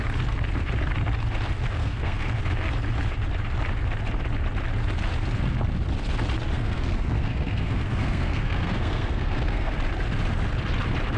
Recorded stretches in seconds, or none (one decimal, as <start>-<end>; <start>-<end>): 0.0-1.8; 2.4-6.5; 9.7-11.2